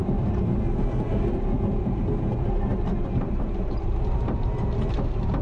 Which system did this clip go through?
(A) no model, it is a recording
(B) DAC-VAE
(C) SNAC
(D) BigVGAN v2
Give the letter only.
D